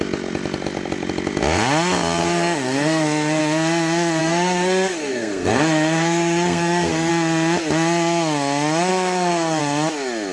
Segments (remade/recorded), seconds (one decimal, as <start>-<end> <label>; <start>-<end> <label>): 0.0-2.2 recorded; 2.2-3.4 remade; 3.4-4.2 recorded; 4.2-7.1 remade; 7.1-8.9 recorded; 8.9-9.6 remade; 9.6-10.3 recorded

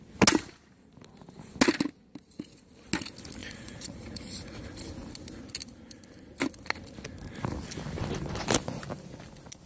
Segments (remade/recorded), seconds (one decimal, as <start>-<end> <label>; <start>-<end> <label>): 0.0-3.4 recorded; 3.4-4.6 remade; 4.6-9.7 recorded

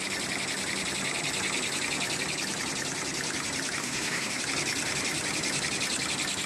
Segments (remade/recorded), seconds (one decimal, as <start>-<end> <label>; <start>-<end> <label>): 0.0-3.8 recorded; 3.8-4.4 remade; 4.4-6.5 recorded

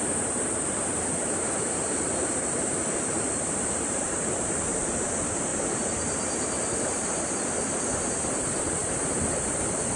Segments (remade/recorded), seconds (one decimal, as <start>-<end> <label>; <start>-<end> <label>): 0.0-5.5 remade; 5.5-6.7 recorded; 6.7-10.0 remade

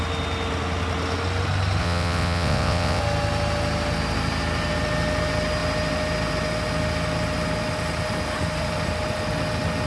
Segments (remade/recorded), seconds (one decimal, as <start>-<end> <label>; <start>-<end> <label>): 0.0-1.8 recorded; 1.8-3.0 remade; 3.0-9.9 recorded

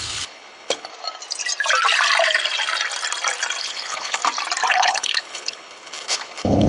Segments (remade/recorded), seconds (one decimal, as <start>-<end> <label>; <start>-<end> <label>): 0.0-0.9 remade; 0.9-3.6 recorded; 3.6-4.2 remade; 4.2-4.7 recorded; 4.7-6.7 remade

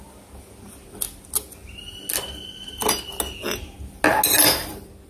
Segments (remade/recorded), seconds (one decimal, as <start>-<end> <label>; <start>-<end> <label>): 0.0-5.1 recorded

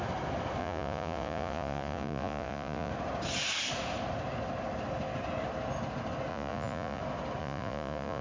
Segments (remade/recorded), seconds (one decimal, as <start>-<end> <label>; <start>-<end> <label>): 0.0-0.6 recorded; 0.6-2.9 remade; 2.9-6.3 recorded; 6.3-7.0 remade; 7.0-7.4 recorded; 7.4-8.2 remade